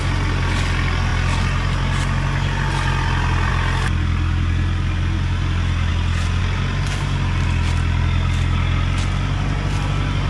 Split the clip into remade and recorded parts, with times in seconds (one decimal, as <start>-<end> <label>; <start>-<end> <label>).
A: 0.0-10.3 recorded